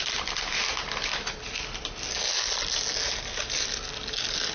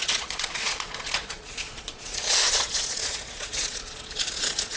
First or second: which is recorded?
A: first